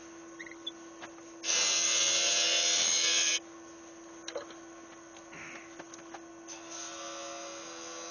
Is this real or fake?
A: real